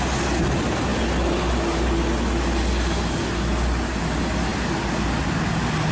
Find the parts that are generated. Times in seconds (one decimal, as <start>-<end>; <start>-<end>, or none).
none